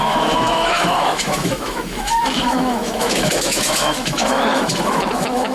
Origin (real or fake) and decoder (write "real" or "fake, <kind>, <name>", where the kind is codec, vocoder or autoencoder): fake, autoencoder, DAC-VAE